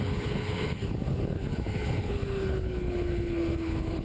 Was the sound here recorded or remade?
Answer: remade